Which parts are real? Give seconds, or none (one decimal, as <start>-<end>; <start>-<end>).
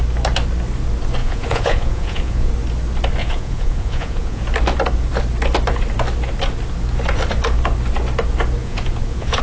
0.0-1.2; 2.5-3.2; 4.4-8.6